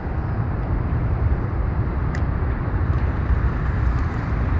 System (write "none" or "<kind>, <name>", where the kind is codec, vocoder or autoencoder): vocoder, BigVGAN v2